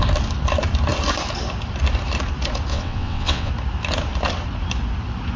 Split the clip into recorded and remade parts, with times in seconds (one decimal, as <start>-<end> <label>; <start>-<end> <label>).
0.0-2.7 recorded; 2.7-3.5 remade; 3.5-5.4 recorded